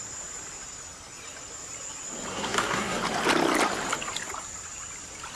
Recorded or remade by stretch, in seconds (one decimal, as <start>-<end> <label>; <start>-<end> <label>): 0.0-2.3 recorded; 2.3-3.0 remade; 3.0-5.4 recorded